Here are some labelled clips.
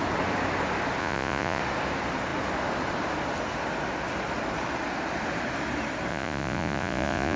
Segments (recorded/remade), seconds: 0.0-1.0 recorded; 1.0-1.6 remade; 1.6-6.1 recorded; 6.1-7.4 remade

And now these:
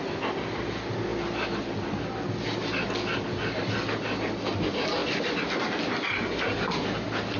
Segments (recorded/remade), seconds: 0.0-7.4 recorded

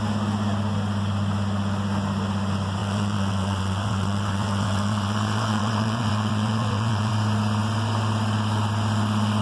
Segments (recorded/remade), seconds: 0.0-2.8 recorded; 2.8-7.1 remade; 7.1-9.4 recorded

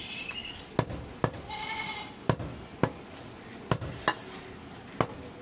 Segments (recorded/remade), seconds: 0.0-5.4 recorded

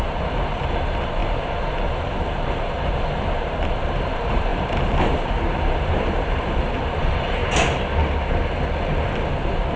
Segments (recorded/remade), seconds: 0.0-7.4 remade; 7.4-9.3 recorded; 9.3-9.8 remade

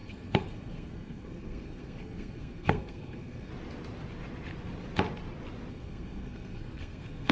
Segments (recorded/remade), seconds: 0.0-3.5 remade; 3.5-5.7 recorded; 5.7-7.3 remade